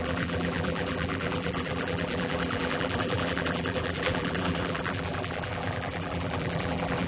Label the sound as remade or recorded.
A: remade